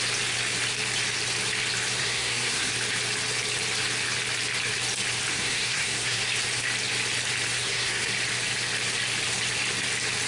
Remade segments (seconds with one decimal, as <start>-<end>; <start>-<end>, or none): 2.0-2.7; 5.3-6.2; 7.5-8.1